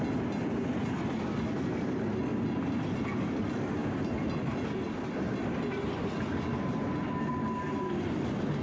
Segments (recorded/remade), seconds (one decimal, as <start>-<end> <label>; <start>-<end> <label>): 0.0-8.6 recorded